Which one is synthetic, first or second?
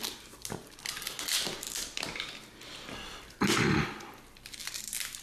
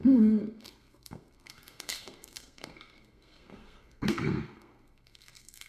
second